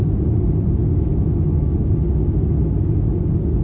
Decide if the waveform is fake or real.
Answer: real